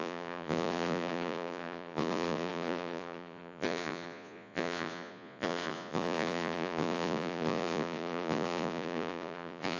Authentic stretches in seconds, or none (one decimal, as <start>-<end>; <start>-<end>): none